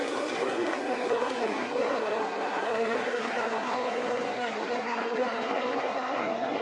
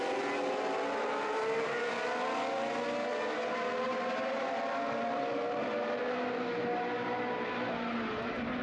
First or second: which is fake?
first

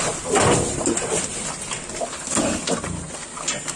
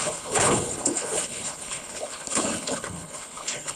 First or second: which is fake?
second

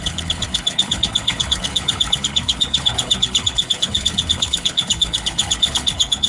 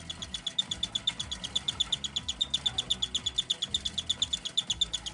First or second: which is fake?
first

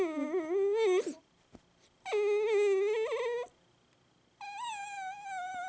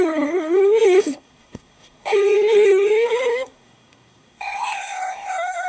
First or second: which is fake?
second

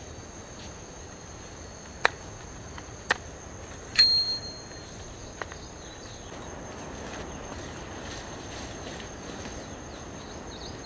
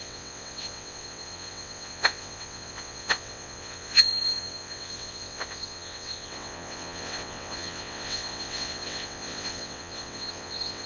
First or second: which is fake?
second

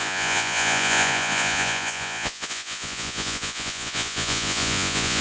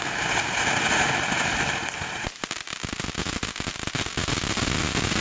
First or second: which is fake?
first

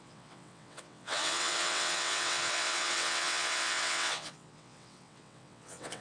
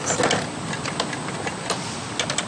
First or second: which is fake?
first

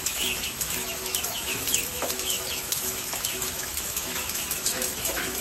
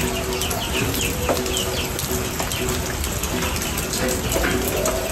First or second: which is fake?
first